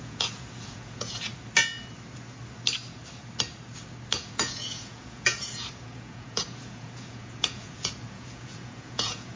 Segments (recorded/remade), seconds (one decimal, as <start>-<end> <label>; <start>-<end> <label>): 0.0-1.3 remade; 1.3-4.2 recorded; 4.2-9.4 remade